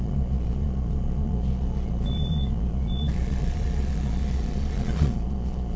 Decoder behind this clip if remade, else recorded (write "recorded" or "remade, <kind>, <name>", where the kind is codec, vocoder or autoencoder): remade, vocoder, Vocos